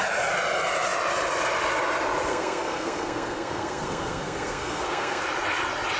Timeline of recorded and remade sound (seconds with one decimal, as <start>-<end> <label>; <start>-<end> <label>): 0.0-2.3 recorded; 2.3-5.2 remade; 5.2-6.0 recorded